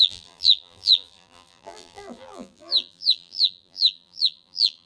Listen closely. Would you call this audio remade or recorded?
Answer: remade